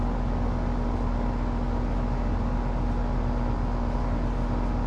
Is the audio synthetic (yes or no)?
no